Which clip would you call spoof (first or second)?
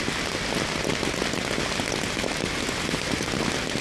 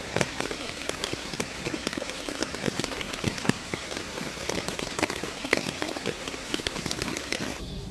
second